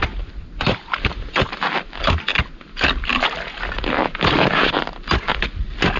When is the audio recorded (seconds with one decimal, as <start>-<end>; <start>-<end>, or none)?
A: 0.0-6.0